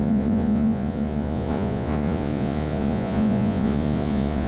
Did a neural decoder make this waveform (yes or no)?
yes